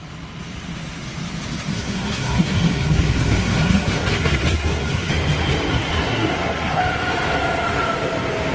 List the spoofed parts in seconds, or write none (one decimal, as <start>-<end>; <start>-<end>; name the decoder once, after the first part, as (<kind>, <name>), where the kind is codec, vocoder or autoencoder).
1.7-5.1 (codec, SNAC); 5.7-6.8